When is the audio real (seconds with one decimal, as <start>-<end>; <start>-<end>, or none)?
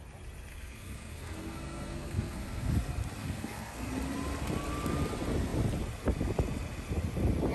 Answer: 0.0-0.5; 2.7-3.2; 3.9-7.5